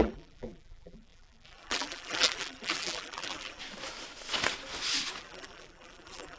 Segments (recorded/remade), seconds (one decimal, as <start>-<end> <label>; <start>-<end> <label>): 0.0-3.6 remade; 3.6-5.2 recorded; 5.2-6.4 remade